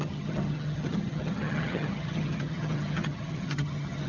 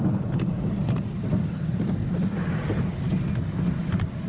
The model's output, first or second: first